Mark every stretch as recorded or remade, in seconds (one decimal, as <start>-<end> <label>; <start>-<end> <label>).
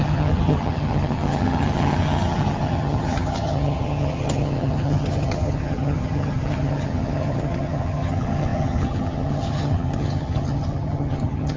0.0-11.6 remade